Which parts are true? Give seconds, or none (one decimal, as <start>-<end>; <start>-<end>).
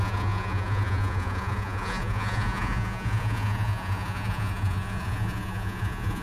none